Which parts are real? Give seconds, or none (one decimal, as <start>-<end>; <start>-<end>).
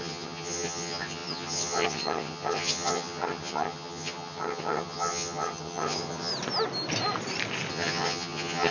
6.3-7.7